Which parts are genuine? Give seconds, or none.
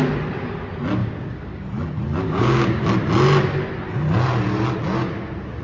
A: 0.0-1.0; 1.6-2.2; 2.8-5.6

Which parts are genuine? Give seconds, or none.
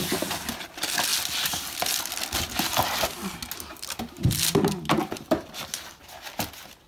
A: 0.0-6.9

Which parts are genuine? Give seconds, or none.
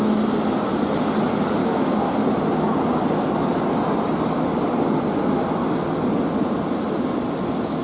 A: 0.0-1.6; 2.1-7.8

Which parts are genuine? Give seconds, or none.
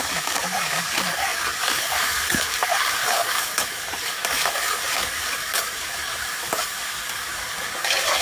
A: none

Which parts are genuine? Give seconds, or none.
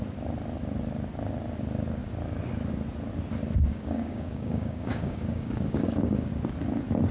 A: 0.0-3.7; 6.3-7.1